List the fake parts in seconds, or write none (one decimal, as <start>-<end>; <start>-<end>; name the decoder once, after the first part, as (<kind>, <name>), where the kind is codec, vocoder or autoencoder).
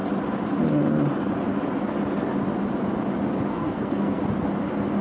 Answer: 3.5-4.2 (codec, SNAC)